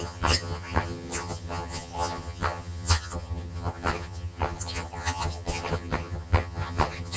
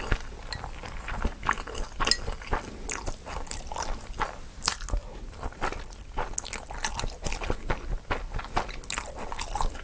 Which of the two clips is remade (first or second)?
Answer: first